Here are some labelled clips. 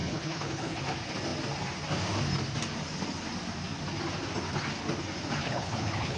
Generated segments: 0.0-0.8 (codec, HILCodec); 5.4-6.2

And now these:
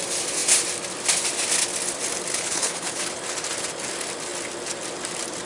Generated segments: 2.3-3.0 (codec, HILCodec)

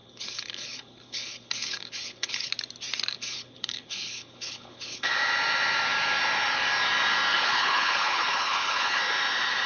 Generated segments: 0.0-2.5 (codec, HILCodec); 3.1-5.1; 7.3-9.0

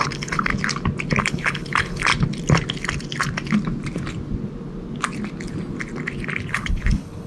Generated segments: 0.0-0.5 (codec, HILCodec); 1.2-2.1; 6.5-7.3